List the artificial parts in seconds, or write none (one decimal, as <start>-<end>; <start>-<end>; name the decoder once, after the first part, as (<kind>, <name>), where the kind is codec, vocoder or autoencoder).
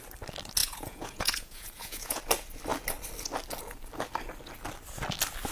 0.6-2.2 (vocoder, Vocos)